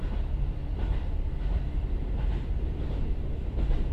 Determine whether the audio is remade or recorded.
recorded